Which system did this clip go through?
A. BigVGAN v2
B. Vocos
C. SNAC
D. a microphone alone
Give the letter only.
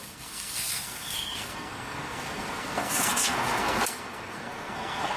C